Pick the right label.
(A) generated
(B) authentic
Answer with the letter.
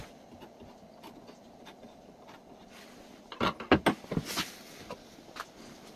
B